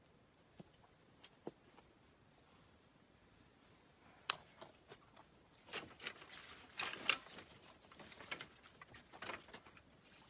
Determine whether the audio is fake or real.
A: real